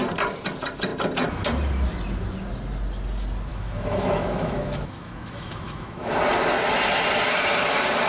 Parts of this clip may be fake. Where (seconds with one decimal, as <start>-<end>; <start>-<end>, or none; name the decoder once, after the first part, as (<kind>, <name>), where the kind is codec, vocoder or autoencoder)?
3.5-6.1 (autoencoder, DAC-VAE)